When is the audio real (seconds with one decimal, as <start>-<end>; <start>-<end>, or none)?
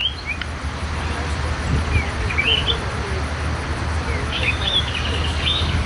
0.0-2.2; 2.6-4.3